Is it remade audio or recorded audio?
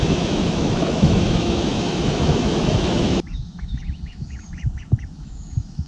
remade